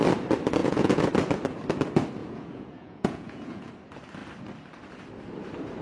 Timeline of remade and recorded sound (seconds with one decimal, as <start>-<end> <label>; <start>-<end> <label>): 0.0-0.6 recorded; 0.6-1.1 remade; 1.1-2.2 recorded; 2.2-3.7 remade; 3.7-5.8 recorded